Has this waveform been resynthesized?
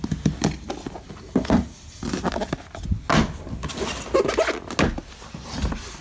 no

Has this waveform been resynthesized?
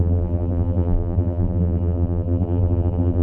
yes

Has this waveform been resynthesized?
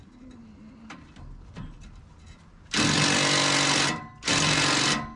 no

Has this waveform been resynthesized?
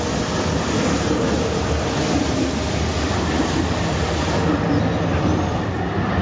no